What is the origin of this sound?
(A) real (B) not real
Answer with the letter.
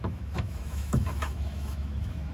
B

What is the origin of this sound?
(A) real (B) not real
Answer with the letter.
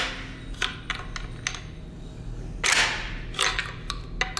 A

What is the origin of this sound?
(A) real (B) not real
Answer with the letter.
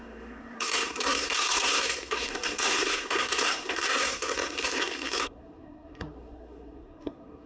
B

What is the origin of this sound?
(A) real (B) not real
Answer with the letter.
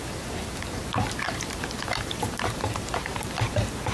B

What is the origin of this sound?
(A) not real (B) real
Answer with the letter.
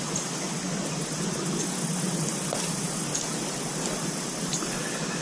B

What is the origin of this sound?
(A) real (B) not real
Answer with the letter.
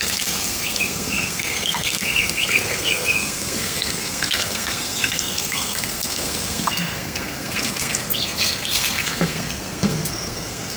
B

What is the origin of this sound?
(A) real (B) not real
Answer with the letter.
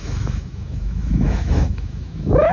B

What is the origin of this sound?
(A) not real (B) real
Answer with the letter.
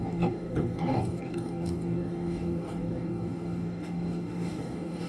A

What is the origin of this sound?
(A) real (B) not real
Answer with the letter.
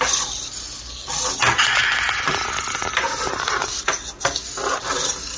A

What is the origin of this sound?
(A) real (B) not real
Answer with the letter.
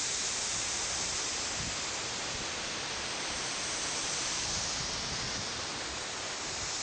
A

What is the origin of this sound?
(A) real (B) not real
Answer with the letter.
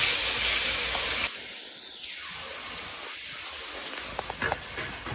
A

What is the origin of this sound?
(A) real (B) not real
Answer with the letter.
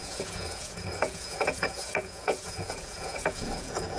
B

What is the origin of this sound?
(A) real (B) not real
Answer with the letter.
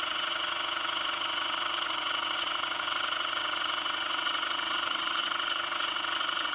B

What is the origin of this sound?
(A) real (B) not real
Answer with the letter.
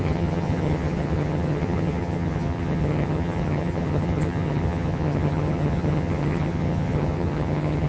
B